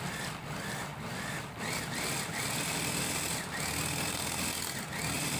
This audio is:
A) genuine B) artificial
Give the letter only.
A